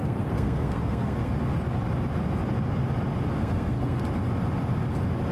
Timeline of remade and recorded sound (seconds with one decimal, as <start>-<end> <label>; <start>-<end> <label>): 0.0-1.3 remade; 1.3-3.4 recorded; 3.4-4.0 remade; 4.0-5.3 recorded